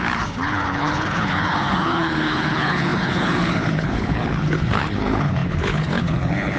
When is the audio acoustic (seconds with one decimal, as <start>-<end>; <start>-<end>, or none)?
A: none